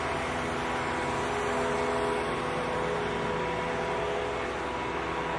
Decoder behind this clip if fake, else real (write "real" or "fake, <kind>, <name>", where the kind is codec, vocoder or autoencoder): real